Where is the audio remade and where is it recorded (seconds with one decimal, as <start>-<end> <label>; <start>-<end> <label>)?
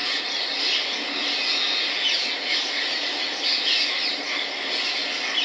0.0-5.4 recorded